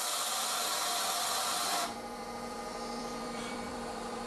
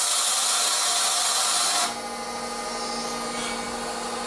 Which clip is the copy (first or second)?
first